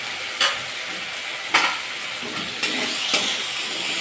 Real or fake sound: real